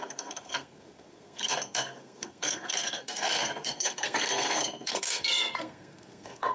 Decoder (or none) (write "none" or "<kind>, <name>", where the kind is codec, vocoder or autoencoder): codec, SNAC